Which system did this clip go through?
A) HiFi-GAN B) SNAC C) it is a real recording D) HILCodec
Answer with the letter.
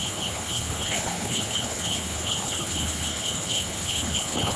D